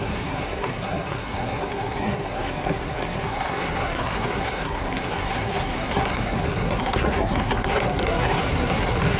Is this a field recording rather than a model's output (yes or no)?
no